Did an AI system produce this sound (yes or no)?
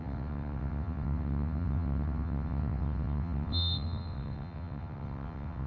yes